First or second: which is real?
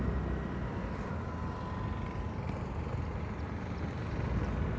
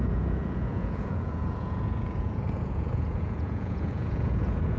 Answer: first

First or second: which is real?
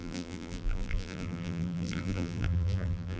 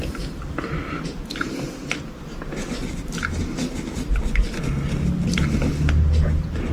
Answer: second